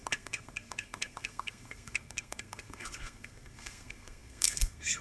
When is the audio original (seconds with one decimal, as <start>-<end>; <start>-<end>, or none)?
none